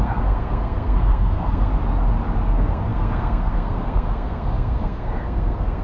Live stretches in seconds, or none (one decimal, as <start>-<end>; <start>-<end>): 1.7-2.4